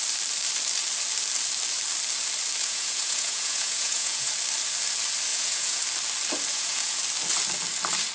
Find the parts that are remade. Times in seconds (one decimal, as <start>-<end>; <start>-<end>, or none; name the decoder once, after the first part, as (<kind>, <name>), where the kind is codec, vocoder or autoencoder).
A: 2.6-4.3 (vocoder, Vocos); 5.3-5.8; 6.5-7.0